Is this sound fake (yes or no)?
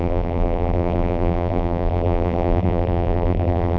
yes